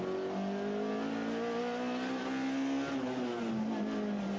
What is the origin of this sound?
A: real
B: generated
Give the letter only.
A